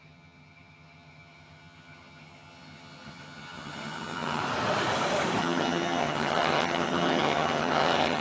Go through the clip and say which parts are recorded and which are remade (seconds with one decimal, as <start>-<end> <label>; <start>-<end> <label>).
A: 0.0-4.4 remade; 4.4-5.4 recorded; 5.4-8.2 remade